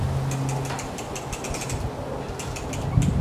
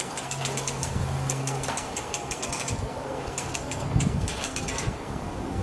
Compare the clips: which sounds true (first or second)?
first